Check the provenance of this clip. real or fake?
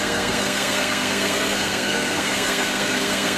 fake